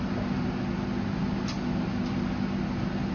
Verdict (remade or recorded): recorded